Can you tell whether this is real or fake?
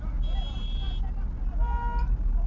real